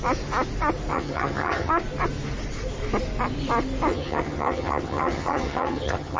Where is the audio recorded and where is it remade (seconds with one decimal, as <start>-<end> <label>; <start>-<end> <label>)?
0.0-0.9 recorded; 0.9-1.7 remade; 1.7-3.9 recorded; 3.9-6.2 remade